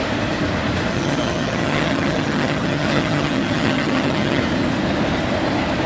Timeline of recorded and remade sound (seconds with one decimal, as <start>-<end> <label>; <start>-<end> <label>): 0.0-0.9 recorded; 0.9-4.4 remade; 4.4-5.9 recorded